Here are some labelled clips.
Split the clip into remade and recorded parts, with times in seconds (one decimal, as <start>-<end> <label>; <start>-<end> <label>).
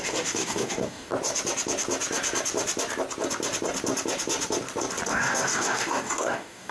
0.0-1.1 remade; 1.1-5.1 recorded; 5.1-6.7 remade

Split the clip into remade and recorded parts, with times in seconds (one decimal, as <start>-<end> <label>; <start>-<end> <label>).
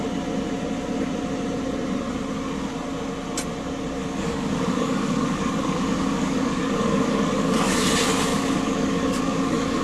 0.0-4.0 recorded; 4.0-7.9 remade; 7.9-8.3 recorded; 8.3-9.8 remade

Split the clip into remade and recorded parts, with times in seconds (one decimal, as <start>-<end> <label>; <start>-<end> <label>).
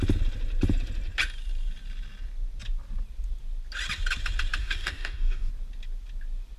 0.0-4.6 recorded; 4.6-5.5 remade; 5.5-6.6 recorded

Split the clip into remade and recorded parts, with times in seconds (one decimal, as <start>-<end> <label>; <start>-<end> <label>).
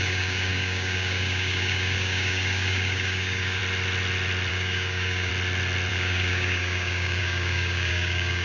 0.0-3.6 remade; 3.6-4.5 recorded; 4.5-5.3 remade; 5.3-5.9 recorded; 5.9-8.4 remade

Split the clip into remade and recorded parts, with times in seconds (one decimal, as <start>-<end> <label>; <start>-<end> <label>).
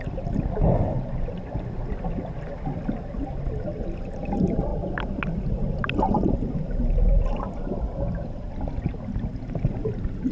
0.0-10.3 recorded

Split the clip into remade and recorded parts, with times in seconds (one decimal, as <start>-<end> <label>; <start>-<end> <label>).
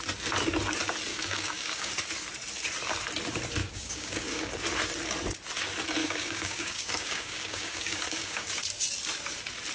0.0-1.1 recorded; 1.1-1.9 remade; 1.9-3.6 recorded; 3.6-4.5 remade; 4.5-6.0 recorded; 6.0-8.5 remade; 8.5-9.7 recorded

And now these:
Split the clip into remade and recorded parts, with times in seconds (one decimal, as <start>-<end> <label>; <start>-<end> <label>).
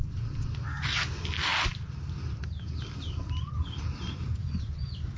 0.0-5.2 recorded